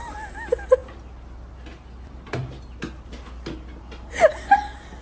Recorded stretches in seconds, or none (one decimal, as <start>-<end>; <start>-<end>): 0.8-3.8